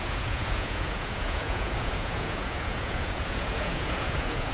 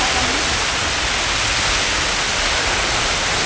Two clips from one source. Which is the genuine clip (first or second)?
second